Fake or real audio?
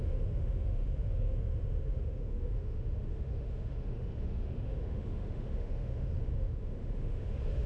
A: fake